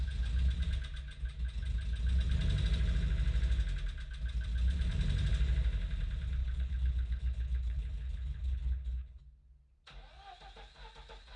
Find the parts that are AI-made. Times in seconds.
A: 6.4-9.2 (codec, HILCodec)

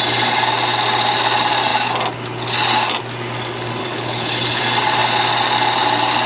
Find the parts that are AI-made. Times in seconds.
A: 3.8-4.6 (codec, HILCodec)

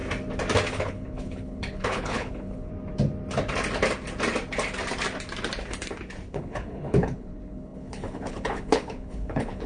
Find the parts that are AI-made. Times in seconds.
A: 0.7-2.7 (codec, HILCodec); 6.3-9.7

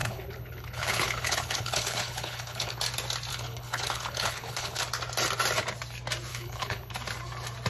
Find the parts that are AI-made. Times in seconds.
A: 0.0-2.8 (codec, HILCodec); 3.3-4.8; 6.3-6.9

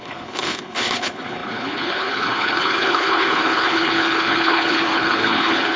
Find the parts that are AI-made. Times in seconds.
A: 0.0-5.8 (codec, HILCodec)

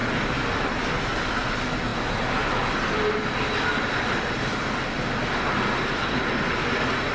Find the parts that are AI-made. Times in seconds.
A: none